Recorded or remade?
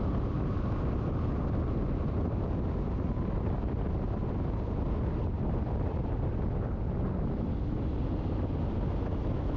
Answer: recorded